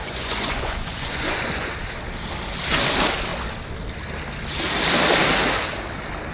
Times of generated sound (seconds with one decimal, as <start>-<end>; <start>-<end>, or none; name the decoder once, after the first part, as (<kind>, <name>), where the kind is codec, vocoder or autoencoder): 0.0-1.7 (vocoder, Vocos)